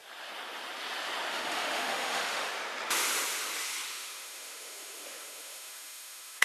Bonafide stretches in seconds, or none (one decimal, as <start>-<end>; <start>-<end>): 0.0-1.3; 2.5-3.9